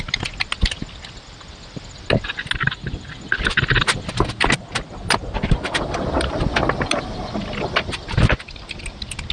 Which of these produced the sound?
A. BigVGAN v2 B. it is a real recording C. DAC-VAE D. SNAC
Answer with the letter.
B